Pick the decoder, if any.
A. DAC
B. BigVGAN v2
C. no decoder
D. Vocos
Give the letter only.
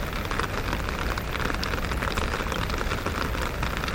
C